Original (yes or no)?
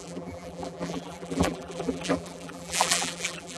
no